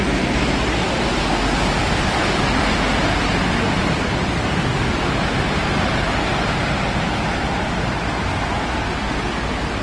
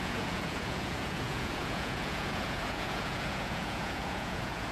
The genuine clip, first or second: first